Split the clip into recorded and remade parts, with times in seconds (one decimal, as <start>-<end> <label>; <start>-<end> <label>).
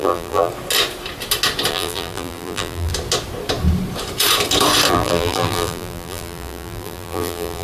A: 0.0-0.5 remade; 0.5-1.7 recorded; 1.7-2.9 remade; 2.9-4.9 recorded; 4.9-7.6 remade